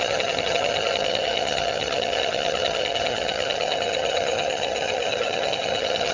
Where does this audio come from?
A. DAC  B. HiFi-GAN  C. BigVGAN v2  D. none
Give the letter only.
B